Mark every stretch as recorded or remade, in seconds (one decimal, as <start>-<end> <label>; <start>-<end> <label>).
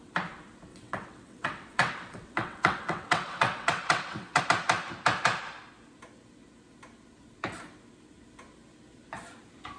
0.0-0.7 recorded; 0.7-4.4 remade; 4.4-9.8 recorded